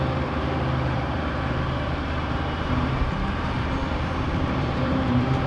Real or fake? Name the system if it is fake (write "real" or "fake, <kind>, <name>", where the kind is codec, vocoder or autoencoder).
fake, vocoder, BigVGAN v2